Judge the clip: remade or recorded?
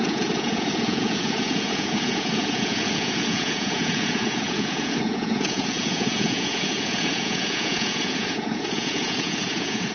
remade